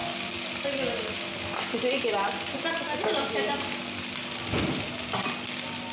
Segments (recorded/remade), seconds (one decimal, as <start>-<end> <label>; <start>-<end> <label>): 0.0-5.9 recorded

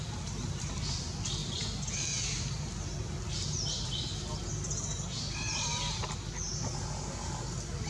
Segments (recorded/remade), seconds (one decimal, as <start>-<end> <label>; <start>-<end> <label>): 0.0-7.9 recorded